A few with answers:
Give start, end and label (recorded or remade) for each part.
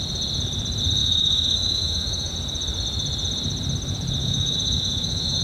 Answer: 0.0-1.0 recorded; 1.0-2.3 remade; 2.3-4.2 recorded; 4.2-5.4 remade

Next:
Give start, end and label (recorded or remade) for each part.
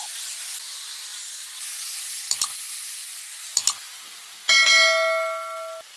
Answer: 0.0-6.0 recorded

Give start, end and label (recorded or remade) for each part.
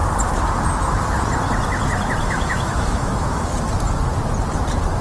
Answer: 0.0-2.2 recorded; 2.2-3.5 remade; 3.5-5.0 recorded